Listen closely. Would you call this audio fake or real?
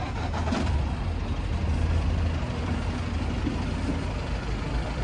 real